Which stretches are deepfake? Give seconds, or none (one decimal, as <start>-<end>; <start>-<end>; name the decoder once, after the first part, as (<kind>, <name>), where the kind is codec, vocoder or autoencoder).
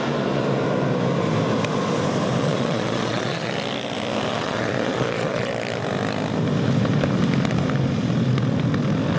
2.4-3.5 (vocoder, Vocos); 4.3-5.5